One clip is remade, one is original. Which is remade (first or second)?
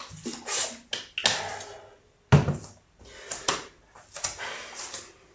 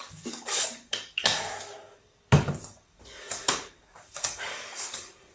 second